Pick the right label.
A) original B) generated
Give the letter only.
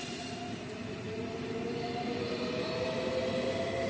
A